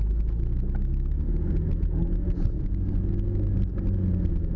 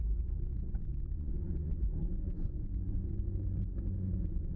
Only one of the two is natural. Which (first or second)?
first